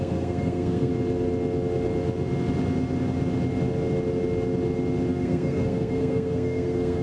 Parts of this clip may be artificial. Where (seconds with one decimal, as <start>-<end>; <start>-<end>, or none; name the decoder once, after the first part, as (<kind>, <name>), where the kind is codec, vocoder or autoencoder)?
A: 0.0-0.9 (codec, SNAC); 5.1-7.0